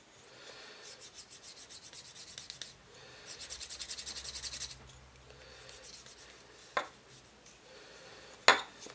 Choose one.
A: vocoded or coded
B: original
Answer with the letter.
B